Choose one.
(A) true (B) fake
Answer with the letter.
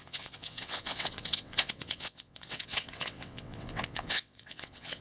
B